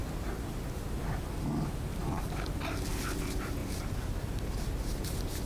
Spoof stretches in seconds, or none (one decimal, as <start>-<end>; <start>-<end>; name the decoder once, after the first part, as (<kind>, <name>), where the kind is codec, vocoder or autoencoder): 0.0-0.6 (vocoder, BigVGAN v2); 3.6-5.5